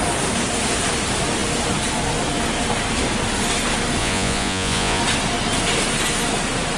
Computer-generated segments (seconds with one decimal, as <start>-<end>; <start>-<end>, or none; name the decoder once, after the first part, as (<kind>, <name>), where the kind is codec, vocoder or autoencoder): 4.0-5.0 (vocoder, Vocos)